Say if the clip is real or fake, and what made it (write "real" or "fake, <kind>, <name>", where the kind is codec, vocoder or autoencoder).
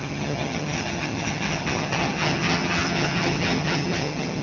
fake, vocoder, HiFi-GAN